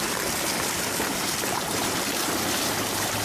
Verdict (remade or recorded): remade